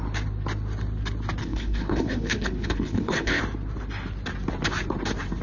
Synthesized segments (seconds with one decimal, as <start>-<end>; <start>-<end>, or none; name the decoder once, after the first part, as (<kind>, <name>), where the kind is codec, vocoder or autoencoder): 1.4-3.4 (codec, HILCodec)